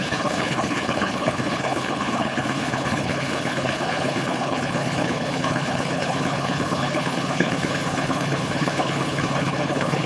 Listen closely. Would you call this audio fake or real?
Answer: fake